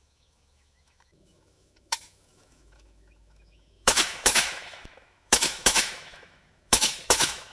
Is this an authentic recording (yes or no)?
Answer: no